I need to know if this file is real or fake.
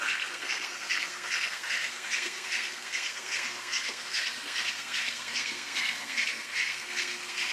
fake